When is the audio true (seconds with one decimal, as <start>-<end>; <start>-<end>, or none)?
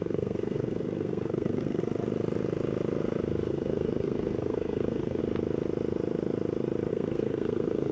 1.8-3.5; 5.2-6.9